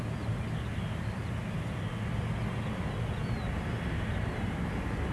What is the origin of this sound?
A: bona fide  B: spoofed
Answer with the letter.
A